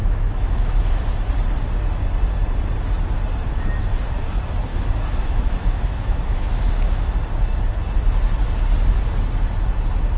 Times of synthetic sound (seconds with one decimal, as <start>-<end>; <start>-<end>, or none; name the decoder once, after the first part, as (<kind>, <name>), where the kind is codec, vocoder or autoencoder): 0.0-1.0 (autoencoder, DAC-VAE); 4.7-7.1